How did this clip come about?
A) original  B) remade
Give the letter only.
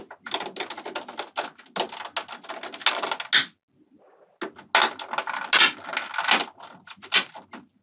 A